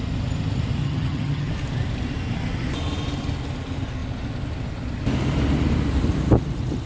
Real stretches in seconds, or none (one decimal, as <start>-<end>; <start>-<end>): 0.0-0.8; 1.5-6.9